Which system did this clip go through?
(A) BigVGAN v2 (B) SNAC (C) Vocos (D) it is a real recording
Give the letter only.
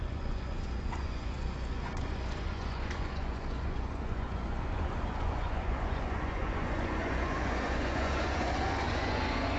C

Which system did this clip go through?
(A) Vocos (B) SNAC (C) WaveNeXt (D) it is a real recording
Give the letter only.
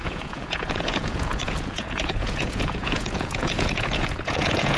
A